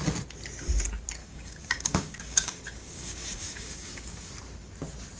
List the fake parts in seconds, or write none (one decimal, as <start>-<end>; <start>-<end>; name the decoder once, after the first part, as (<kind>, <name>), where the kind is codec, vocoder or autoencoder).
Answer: 1.2-4.3 (codec, DAC)